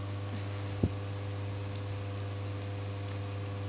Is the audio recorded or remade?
recorded